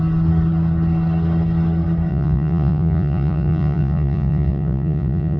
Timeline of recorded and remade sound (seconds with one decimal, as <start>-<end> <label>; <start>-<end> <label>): 0.0-2.1 recorded; 2.1-5.4 remade